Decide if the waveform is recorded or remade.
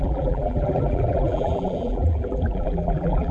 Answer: remade